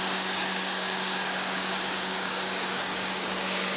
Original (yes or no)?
no